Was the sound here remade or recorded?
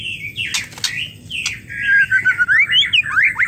recorded